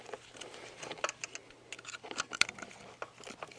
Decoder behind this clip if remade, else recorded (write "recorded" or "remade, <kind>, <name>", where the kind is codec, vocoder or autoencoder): recorded